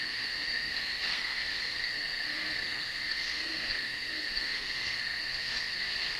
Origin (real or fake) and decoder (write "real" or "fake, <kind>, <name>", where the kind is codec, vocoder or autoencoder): fake, codec, SNAC